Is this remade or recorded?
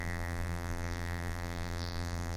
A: remade